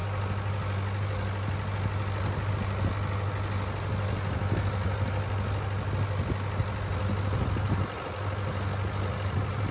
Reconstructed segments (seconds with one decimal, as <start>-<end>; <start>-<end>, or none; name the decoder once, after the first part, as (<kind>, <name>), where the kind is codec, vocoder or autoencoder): none